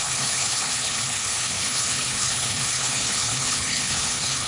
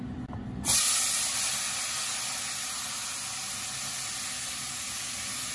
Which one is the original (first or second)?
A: second